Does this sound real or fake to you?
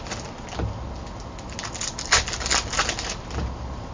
real